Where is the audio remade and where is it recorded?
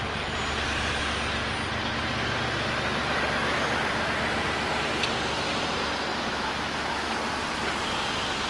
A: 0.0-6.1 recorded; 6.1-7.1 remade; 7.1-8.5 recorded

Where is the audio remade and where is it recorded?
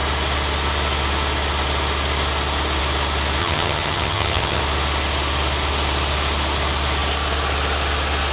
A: 0.0-3.4 recorded; 3.4-4.6 remade; 4.6-8.3 recorded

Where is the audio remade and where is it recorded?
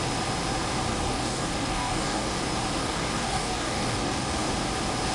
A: 0.0-0.9 recorded; 0.9-2.4 remade; 2.4-2.8 recorded; 2.8-4.5 remade; 4.5-5.1 recorded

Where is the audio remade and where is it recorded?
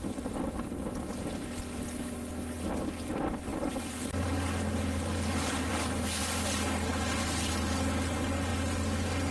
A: 0.0-3.5 recorded; 3.5-5.7 remade; 5.7-9.3 recorded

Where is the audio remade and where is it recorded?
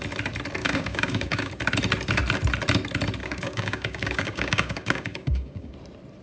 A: 0.0-0.6 recorded; 0.6-1.5 remade; 1.5-3.2 recorded; 3.2-5.7 remade; 5.7-6.2 recorded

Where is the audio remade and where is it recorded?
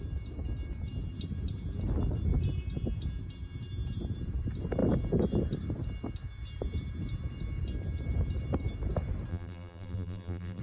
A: 0.0-9.3 recorded; 9.3-10.6 remade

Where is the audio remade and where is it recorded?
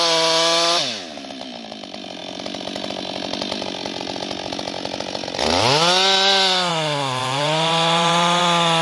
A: 0.0-7.2 recorded; 7.2-8.4 remade; 8.4-8.8 recorded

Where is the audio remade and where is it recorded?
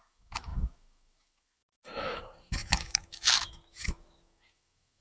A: 0.0-5.0 remade